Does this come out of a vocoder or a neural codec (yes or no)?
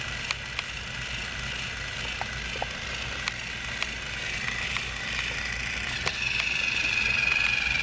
no